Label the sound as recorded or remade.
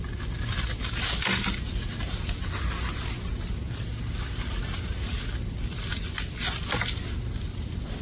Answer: recorded